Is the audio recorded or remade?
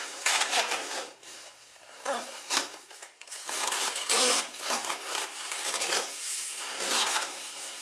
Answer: remade